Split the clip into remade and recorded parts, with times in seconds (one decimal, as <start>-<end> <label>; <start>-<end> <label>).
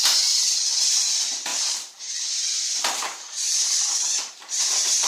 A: 0.0-1.5 recorded; 1.5-4.6 remade; 4.6-5.1 recorded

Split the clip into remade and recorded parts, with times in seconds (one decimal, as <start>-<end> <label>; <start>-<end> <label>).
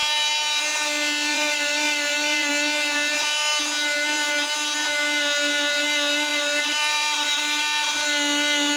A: 0.0-1.3 recorded; 1.3-2.5 remade; 2.5-6.3 recorded; 6.3-7.4 remade; 7.4-8.8 recorded